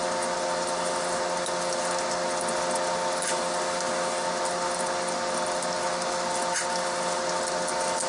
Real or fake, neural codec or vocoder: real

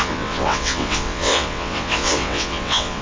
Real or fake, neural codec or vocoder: fake, vocoder, WaveNeXt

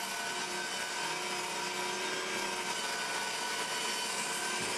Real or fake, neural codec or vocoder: real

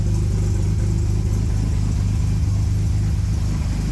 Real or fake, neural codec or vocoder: real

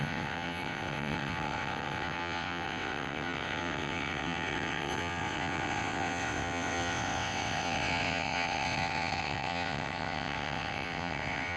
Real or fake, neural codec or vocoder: fake, vocoder, WaveNeXt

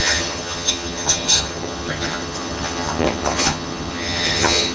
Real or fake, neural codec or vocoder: fake, vocoder, HiFi-GAN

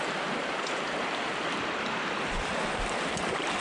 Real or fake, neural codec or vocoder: real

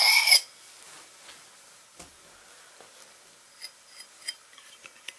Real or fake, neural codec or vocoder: real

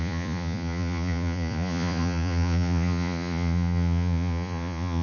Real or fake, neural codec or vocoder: fake, vocoder, Vocos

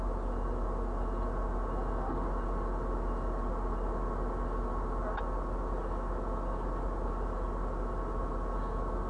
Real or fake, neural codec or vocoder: real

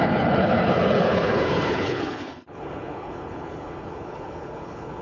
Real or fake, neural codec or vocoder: fake, codec, HILCodec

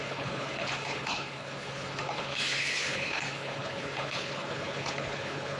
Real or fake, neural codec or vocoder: fake, codec, HILCodec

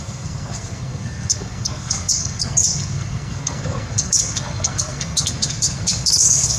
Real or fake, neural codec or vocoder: fake, codec, SNAC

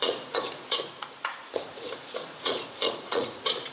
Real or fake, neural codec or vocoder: fake, vocoder, Vocos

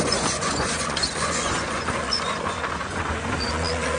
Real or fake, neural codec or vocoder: fake, vocoder, Vocos